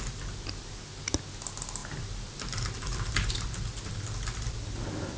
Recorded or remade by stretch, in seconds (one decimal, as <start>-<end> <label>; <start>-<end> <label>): 0.0-5.2 recorded